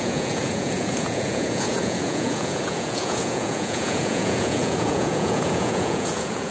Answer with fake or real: fake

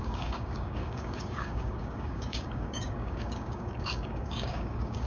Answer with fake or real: fake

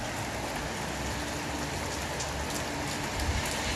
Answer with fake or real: real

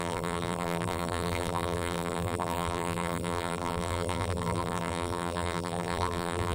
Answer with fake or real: fake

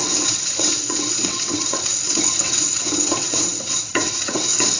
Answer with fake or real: fake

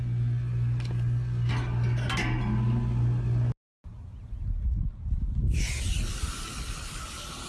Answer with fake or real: real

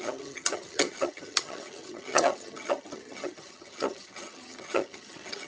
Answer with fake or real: fake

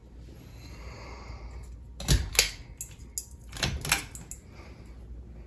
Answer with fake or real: real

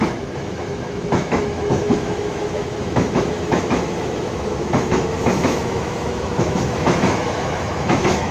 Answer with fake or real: fake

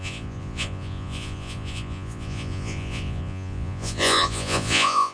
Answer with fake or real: fake